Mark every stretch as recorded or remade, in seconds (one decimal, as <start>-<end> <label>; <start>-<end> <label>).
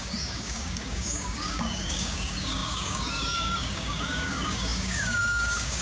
0.0-5.8 remade